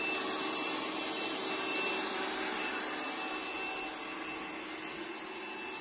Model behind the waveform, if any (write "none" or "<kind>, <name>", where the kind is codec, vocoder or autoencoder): none